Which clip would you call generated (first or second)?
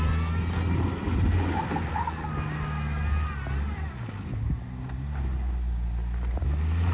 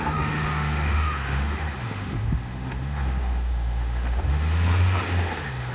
second